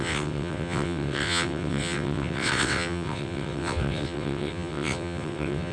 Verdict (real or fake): fake